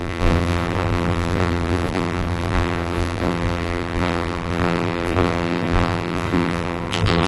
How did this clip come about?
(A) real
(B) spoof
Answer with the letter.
B